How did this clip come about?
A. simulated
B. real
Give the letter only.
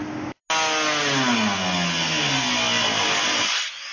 B